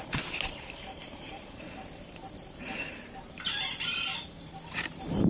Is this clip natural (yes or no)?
no